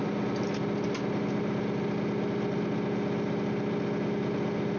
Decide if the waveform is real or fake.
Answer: real